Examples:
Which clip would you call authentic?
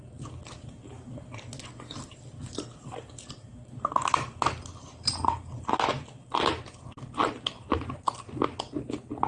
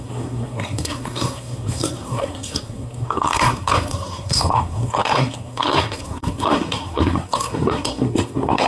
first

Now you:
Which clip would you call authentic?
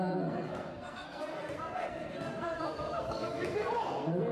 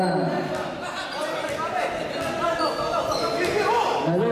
second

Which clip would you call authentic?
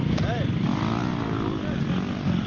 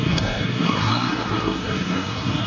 first